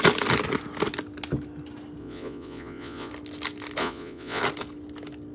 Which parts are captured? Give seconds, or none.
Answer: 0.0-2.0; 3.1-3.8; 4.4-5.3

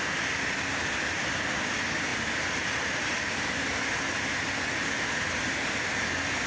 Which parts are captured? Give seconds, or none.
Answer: 0.0-6.5

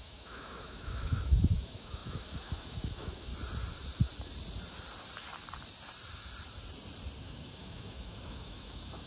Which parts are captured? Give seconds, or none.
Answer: 3.3-7.2